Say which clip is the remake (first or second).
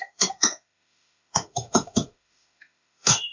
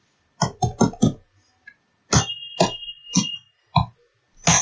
first